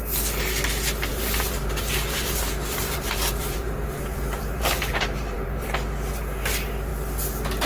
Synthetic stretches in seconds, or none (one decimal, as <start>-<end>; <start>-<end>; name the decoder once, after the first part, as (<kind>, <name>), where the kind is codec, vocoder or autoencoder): 1.1-5.7 (vocoder, BigVGAN v2)